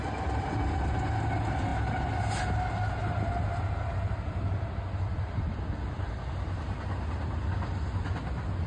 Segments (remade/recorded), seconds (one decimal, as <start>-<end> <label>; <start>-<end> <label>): 0.0-8.7 recorded